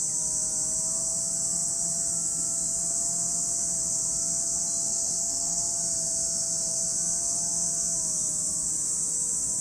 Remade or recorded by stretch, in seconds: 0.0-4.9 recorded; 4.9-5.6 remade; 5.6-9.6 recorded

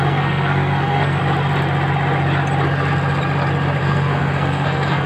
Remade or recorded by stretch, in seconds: 0.0-1.2 remade; 1.2-3.8 recorded; 3.8-5.1 remade

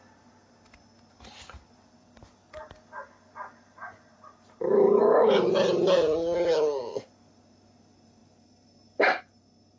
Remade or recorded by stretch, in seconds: 0.0-9.8 recorded

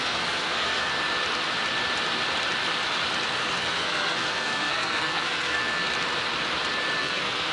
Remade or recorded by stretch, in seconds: 0.0-0.9 remade; 0.9-3.5 recorded; 3.5-5.8 remade; 5.8-7.0 recorded; 7.0-7.5 remade

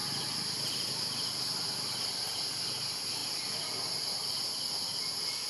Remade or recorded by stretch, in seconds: 0.0-5.5 recorded

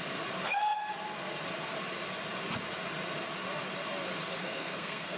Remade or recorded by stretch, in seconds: 0.0-4.4 recorded; 4.4-5.2 remade